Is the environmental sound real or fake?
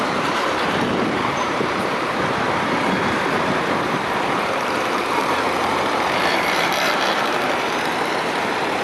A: fake